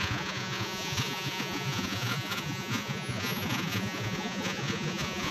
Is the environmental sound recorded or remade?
remade